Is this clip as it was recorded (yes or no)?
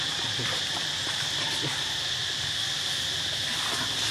yes